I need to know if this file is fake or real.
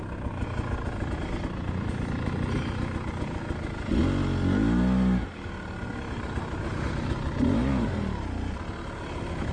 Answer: real